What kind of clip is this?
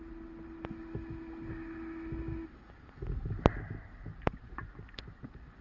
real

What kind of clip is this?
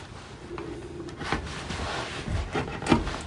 fake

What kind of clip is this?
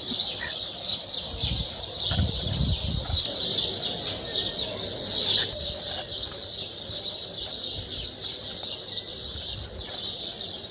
fake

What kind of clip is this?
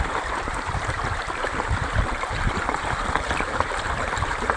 fake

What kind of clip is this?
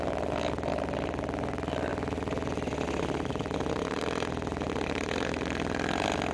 real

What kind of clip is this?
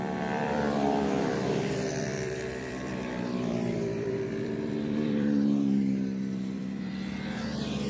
fake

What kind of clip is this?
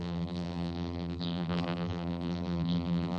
fake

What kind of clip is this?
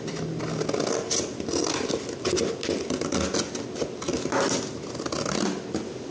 real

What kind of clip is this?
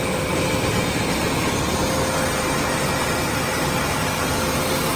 real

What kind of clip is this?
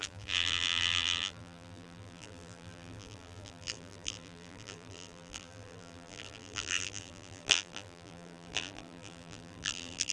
fake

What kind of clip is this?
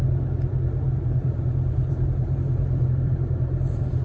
fake